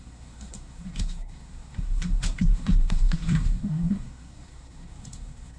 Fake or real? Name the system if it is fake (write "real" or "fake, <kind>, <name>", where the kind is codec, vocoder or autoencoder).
fake, codec, SNAC